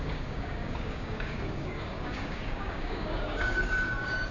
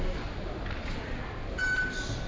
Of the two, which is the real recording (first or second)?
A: second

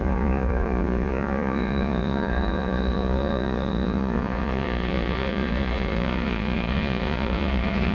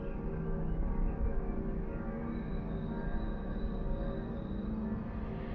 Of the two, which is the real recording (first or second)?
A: second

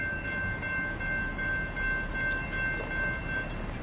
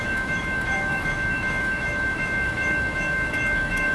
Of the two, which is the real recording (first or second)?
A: first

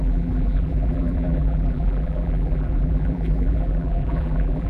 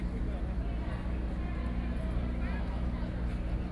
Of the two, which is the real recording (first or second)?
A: second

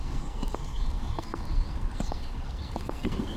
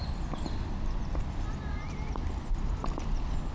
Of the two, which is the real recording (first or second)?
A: second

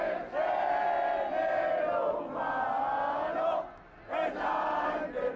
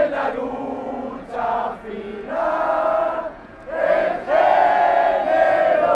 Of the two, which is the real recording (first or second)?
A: first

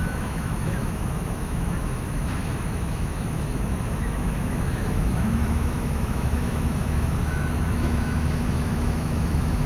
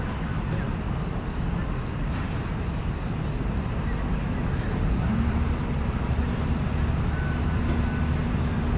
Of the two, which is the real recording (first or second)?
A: second